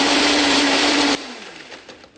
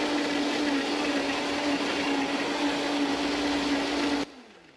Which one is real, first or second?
second